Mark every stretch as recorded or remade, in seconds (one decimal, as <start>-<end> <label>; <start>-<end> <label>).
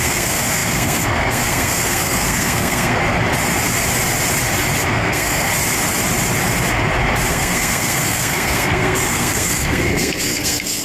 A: 0.0-3.0 remade; 3.0-4.9 recorded; 4.9-5.5 remade; 5.5-7.3 recorded; 7.3-10.8 remade